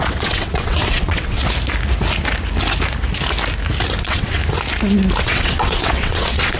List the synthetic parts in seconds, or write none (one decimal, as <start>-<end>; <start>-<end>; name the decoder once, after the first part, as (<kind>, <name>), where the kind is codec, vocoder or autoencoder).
0.0-1.4 (vocoder, WaveNeXt); 4.0-4.4; 5.2-6.6